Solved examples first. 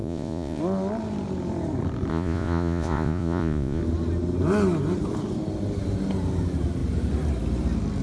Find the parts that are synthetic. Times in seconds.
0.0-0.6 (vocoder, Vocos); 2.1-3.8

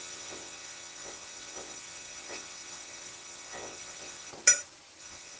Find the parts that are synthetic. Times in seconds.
0.0-4.3 (vocoder, WaveNeXt); 5.0-5.4

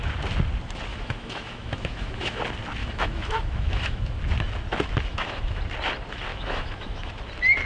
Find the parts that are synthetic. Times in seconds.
0.9-2.4 (autoencoder, DAC-VAE); 2.8-4.2; 5.1-5.6; 6.3-7.1

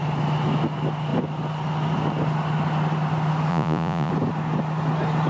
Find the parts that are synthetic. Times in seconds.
3.5-4.1 (vocoder, Vocos)

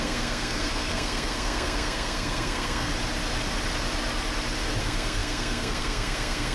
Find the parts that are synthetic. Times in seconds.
0.0-2.9 (codec, SNAC); 4.8-6.5

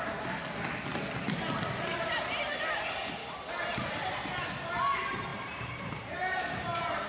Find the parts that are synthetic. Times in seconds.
5.3-7.1 (vocoder, BigVGAN v2)

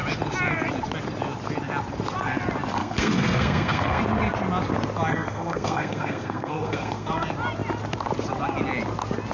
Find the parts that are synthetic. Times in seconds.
2.8-4.0 (codec, SNAC); 5.1-7.1